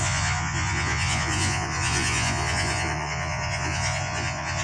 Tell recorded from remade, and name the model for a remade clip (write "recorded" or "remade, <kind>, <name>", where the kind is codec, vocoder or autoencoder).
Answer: remade, vocoder, Vocos